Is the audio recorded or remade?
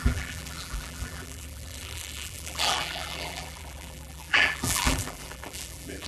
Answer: remade